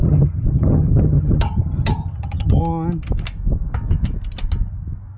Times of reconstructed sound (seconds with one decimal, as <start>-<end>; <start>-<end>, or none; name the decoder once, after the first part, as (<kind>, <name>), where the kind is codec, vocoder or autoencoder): 0.0-2.6 (vocoder, HiFi-GAN)